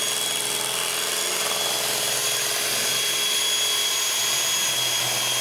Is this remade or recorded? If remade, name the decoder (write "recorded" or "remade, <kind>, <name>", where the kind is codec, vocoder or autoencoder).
recorded